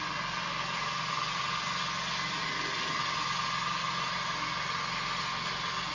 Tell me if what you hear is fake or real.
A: real